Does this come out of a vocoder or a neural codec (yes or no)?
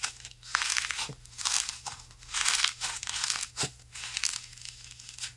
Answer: yes